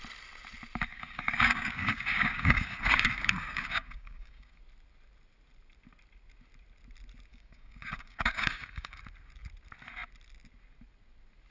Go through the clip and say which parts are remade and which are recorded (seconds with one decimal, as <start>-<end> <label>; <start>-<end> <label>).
0.0-0.9 recorded; 0.9-4.6 remade; 4.6-7.3 recorded; 7.3-9.0 remade; 9.0-11.5 recorded